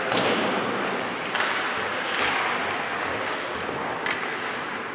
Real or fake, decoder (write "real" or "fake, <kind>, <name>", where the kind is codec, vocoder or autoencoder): real